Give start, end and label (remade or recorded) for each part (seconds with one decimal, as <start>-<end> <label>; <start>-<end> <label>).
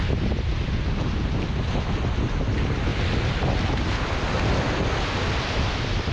0.0-6.1 recorded